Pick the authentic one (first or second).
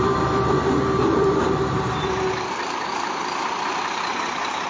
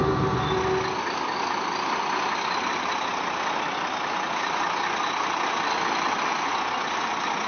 second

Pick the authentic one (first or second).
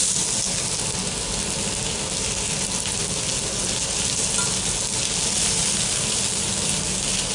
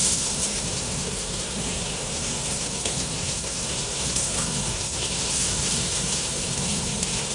first